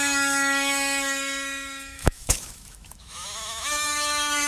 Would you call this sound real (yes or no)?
no